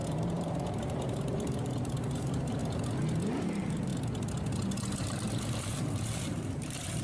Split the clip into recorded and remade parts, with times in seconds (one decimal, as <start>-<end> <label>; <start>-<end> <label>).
0.0-2.6 remade; 2.6-3.4 recorded; 3.4-3.9 remade; 3.9-5.0 recorded; 5.0-7.0 remade